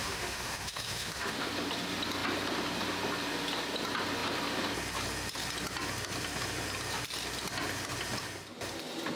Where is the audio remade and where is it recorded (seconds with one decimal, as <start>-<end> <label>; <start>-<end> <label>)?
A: 0.0-1.5 remade; 1.5-9.2 recorded